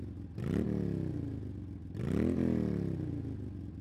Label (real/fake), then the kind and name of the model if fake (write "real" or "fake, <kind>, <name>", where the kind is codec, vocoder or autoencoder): real